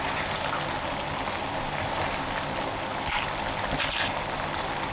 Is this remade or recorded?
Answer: recorded